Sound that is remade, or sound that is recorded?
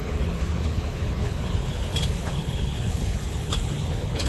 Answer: remade